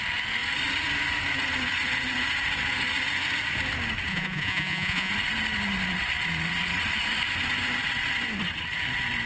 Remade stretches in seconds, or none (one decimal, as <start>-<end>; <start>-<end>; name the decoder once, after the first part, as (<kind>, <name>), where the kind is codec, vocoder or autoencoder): 4.1-5.1 (vocoder, Vocos)